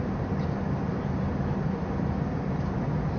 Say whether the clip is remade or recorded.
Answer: recorded